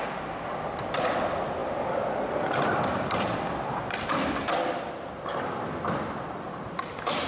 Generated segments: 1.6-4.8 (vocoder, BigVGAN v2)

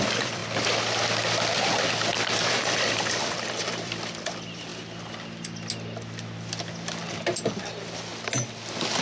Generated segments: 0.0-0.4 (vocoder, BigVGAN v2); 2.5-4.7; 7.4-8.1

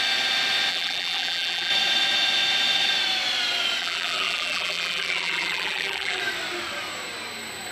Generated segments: 0.7-1.7 (vocoder, BigVGAN v2); 3.8-6.2

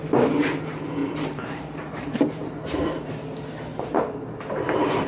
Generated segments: 1.0-3.1 (vocoder, BigVGAN v2); 3.7-4.4

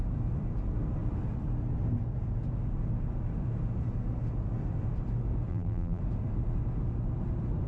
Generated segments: 5.5-6.0 (vocoder, BigVGAN v2)

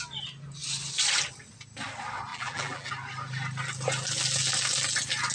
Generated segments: 2.3-2.9 (vocoder, BigVGAN v2)

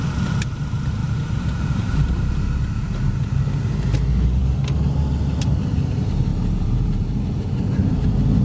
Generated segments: 1.0-2.3 (vocoder, BigVGAN v2); 6.3-7.9

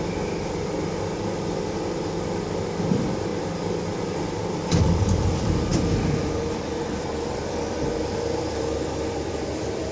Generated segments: 0.0-9.9 (vocoder, BigVGAN v2)